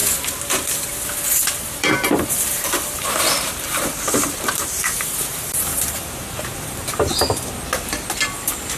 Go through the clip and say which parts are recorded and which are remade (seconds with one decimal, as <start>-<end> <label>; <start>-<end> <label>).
0.0-1.6 recorded; 1.6-7.1 remade; 7.1-8.8 recorded